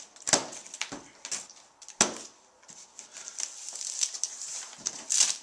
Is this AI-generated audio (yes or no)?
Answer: no